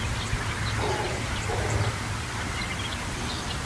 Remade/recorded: recorded